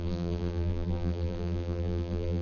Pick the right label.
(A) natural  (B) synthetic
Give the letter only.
B